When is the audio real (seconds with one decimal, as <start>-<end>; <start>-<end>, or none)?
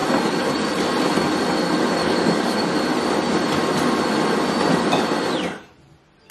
0.0-2.0; 2.8-6.3